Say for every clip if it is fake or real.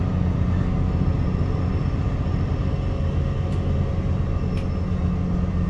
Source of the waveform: real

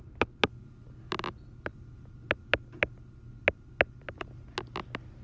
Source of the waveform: real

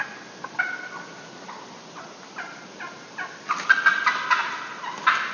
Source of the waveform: real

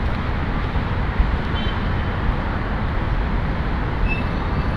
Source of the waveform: real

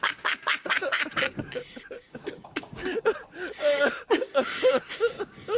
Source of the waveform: fake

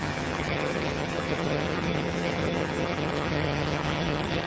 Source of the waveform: fake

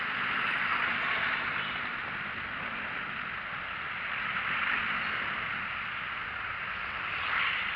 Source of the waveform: real